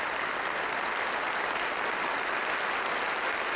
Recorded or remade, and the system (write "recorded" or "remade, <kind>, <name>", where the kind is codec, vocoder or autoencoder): recorded